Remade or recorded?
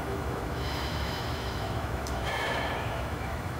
remade